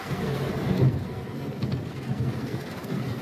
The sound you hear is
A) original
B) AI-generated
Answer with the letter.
B